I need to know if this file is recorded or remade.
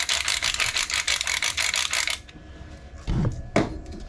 recorded